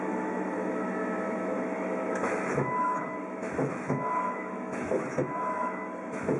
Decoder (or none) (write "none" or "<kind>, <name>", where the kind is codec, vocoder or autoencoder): autoencoder, DAC-VAE